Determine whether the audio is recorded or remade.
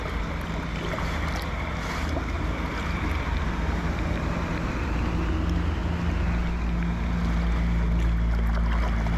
recorded